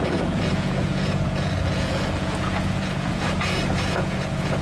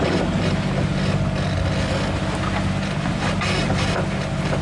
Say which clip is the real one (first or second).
second